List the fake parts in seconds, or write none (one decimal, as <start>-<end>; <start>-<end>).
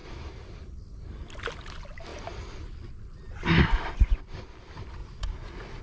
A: 5.0-5.8